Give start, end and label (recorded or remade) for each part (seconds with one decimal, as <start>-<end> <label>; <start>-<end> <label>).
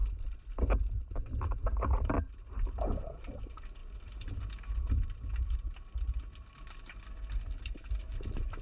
0.0-8.6 recorded